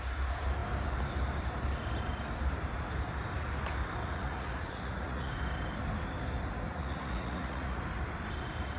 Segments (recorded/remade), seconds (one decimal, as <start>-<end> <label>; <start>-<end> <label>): 0.0-4.0 recorded; 4.0-5.3 remade; 5.3-6.7 recorded; 6.7-7.8 remade; 7.8-8.8 recorded